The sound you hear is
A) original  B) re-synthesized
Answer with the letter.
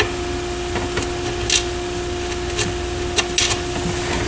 A